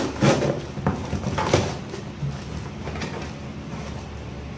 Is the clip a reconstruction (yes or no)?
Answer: no